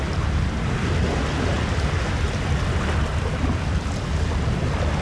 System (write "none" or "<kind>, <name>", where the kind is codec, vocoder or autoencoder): none